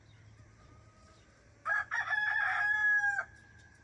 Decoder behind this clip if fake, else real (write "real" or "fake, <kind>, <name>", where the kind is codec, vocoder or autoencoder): real